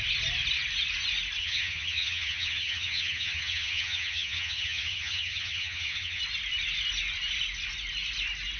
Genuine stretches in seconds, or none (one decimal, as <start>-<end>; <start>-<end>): 0.0-1.4; 6.2-8.6